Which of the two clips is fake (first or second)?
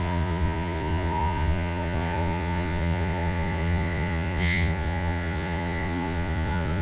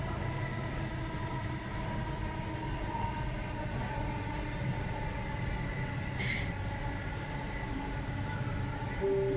first